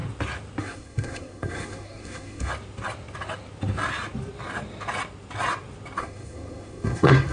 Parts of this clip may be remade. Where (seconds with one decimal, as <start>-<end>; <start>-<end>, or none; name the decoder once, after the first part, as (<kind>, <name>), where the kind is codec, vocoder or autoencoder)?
0.6-2.5 (codec, SNAC); 6.0-7.3